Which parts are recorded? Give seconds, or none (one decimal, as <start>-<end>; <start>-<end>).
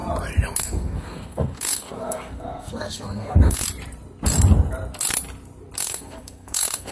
0.0-0.6; 3.6-5.8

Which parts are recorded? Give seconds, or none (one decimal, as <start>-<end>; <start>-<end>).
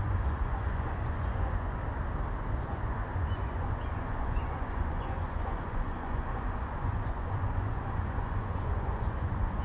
1.8-2.5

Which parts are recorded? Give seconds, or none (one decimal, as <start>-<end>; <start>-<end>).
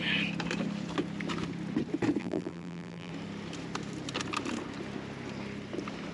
0.0-2.2; 3.1-6.1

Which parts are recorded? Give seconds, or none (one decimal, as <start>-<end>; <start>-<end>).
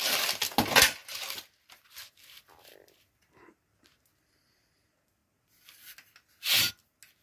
0.0-7.2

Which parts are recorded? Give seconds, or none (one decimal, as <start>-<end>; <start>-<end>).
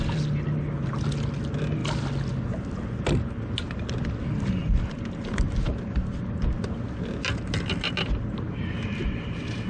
0.0-9.7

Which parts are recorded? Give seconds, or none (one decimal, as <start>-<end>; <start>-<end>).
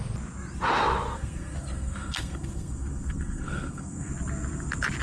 0.0-1.1; 4.1-5.0